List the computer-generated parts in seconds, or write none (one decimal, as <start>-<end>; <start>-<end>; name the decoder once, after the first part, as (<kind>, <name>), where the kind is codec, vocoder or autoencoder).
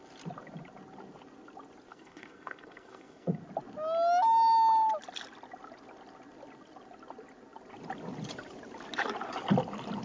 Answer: 1.9-3.4 (codec, SNAC)